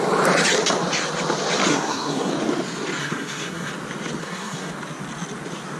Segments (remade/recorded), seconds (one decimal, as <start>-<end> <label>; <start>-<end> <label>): 0.0-1.7 recorded; 1.7-2.3 remade; 2.3-3.0 recorded; 3.0-3.7 remade; 3.7-4.2 recorded; 4.2-4.7 remade; 4.7-5.8 recorded